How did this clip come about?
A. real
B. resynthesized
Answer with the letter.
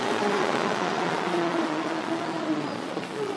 B